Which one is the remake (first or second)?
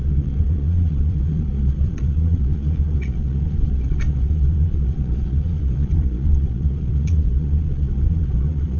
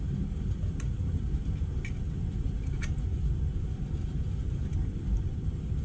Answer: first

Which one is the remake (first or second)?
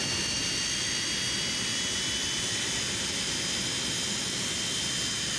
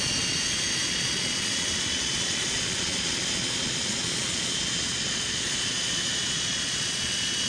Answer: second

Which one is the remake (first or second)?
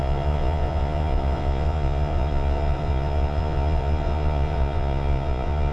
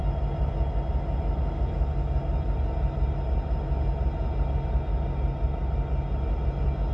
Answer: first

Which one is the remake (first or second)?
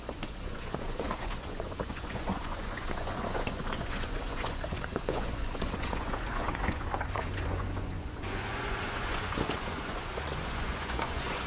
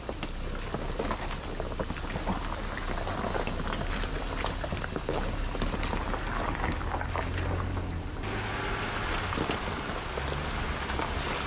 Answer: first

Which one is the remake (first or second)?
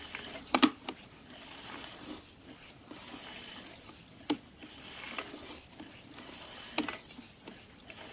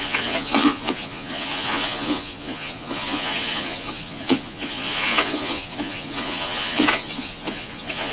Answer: second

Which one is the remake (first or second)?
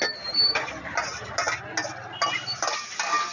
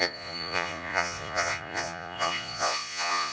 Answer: second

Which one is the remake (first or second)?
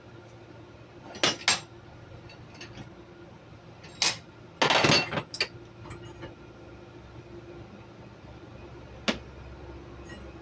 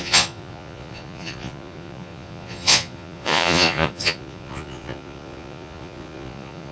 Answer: second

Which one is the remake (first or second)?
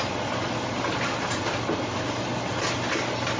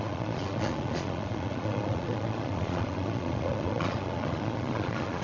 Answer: second